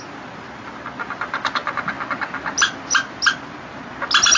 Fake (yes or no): no